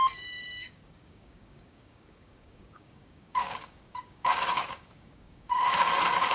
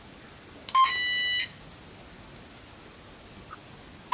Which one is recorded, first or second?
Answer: second